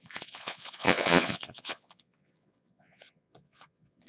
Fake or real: fake